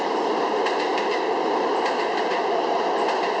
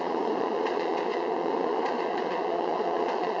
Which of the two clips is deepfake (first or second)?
second